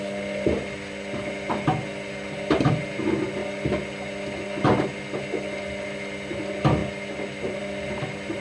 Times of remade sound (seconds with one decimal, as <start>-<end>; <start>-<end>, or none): none